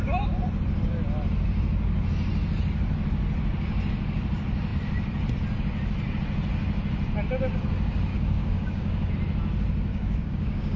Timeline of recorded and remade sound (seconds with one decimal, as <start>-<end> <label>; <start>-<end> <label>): 0.0-8.1 recorded; 8.1-9.1 remade; 9.1-9.9 recorded; 9.9-10.8 remade